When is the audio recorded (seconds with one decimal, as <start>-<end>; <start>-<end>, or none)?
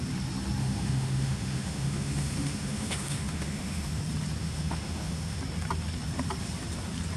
0.0-0.6; 4.0-4.4; 5.4-7.2